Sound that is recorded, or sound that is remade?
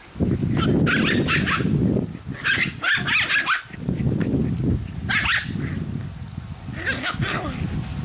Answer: recorded